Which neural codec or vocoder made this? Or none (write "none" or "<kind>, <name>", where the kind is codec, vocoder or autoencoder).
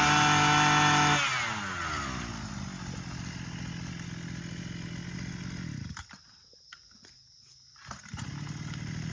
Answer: none